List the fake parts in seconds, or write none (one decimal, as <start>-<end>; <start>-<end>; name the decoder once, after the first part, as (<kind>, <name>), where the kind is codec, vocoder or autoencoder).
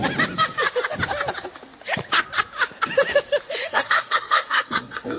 3.7-5.2 (codec, SNAC)